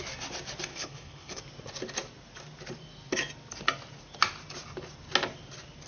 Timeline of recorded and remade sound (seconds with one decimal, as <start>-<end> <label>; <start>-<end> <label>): 0.0-0.7 recorded; 0.7-1.4 remade; 1.4-5.9 recorded